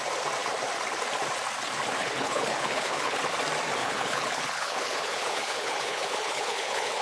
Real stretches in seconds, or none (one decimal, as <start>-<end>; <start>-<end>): 0.0-2.0; 3.2-3.8